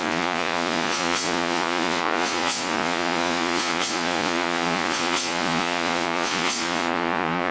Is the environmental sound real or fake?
fake